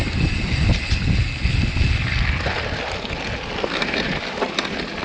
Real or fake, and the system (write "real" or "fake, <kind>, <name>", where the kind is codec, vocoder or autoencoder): real